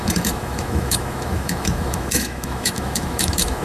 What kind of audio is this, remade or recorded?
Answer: remade